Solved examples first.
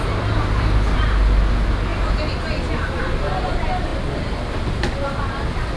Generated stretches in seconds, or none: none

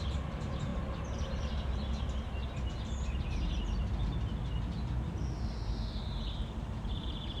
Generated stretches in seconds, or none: 0.0-2.4 (vocoder, BigVGAN v2); 6.3-7.4

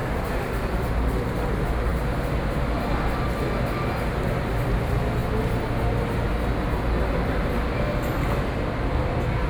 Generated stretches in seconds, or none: 0.0-0.9 (vocoder, BigVGAN v2)

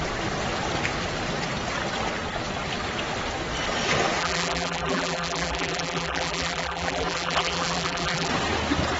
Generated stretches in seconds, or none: 4.2-8.3 (vocoder, BigVGAN v2)

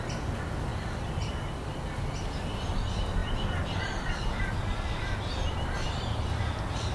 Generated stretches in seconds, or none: 0.7-1.3 (vocoder, BigVGAN v2); 3.2-4.4

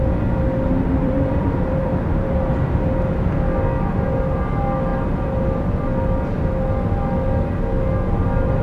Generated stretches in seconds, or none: 1.0-2.9 (vocoder, BigVGAN v2); 4.9-5.5

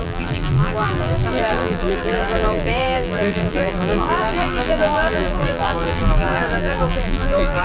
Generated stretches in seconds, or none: 0.0-7.6 (vocoder, BigVGAN v2)